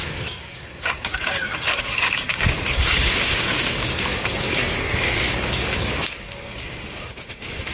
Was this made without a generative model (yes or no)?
no